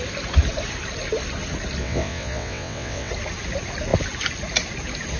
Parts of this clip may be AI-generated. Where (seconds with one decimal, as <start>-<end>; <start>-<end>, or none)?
1.8-3.1